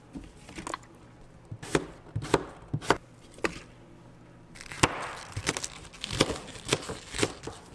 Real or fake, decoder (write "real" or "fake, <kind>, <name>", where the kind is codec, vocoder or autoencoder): real